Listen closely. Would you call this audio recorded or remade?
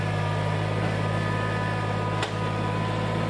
recorded